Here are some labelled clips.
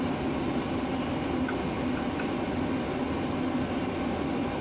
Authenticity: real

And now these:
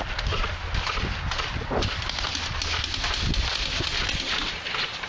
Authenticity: real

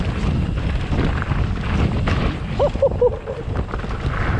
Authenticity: real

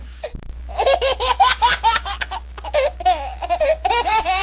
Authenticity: fake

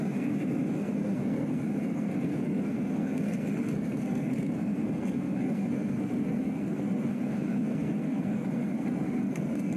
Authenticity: fake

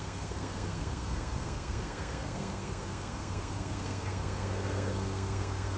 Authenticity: fake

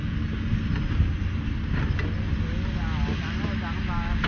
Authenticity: real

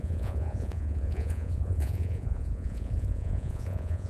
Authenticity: fake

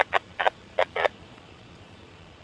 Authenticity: fake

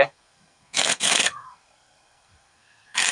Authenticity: fake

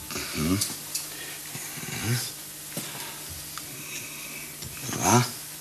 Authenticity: real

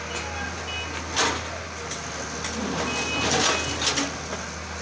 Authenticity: real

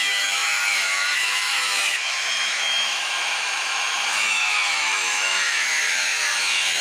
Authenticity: fake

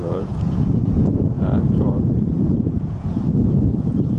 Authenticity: fake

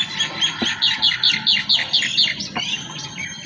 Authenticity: real